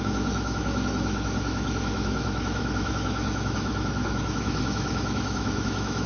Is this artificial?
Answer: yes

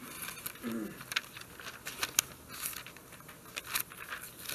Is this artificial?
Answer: no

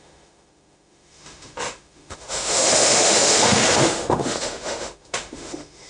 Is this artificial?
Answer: yes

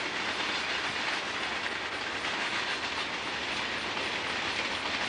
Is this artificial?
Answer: no